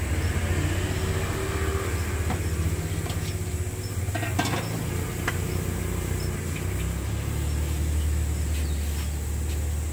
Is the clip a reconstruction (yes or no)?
no